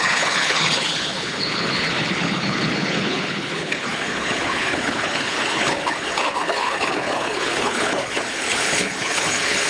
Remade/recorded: remade